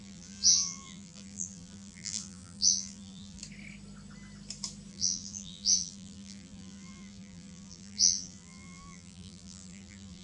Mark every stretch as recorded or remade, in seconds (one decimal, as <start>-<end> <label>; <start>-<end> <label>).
0.0-3.4 remade; 3.4-4.9 recorded; 4.9-10.2 remade